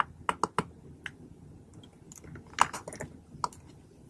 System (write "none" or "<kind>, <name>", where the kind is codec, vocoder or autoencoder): none